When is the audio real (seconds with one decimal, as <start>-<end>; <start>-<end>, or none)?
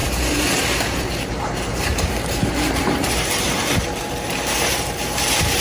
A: none